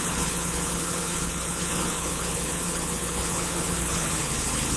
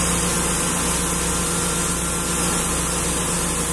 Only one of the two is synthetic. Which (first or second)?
first